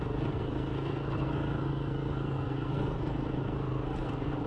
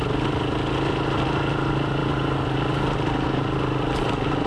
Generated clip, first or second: first